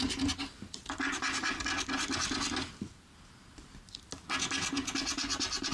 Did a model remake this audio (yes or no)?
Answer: no